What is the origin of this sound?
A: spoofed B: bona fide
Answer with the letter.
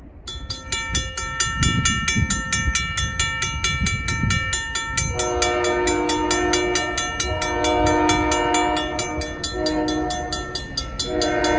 B